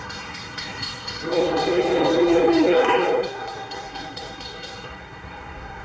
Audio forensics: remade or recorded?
remade